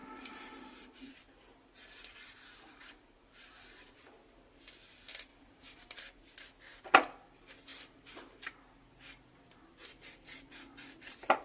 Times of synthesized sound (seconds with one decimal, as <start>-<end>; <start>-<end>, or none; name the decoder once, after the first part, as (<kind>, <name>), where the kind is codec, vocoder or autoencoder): 0.0-1.1 (vocoder, BigVGAN v2); 2.7-4.0; 5.3-6.0; 7.7-8.5

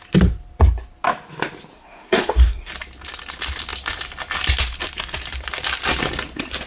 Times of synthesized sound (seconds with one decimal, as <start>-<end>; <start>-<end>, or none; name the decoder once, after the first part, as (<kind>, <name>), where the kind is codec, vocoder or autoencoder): 1.7-2.7 (codec, SNAC)

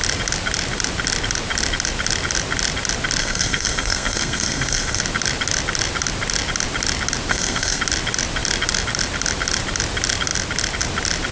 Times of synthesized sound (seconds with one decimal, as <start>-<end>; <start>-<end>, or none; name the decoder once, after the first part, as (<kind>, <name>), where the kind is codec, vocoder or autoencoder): 3.2-5.0 (codec, SNAC); 7.3-7.8

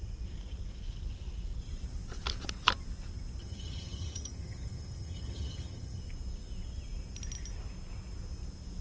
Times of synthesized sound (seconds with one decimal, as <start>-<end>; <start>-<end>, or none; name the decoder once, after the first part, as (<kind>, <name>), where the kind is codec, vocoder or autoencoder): 3.4-6.0 (vocoder, HiFi-GAN)